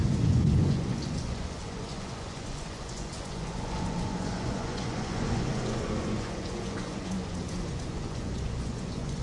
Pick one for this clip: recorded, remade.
remade